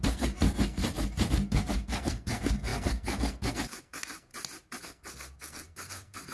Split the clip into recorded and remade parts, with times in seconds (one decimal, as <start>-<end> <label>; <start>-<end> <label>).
0.0-0.8 remade; 0.8-1.3 recorded; 1.3-4.3 remade; 4.3-4.8 recorded; 4.8-6.3 remade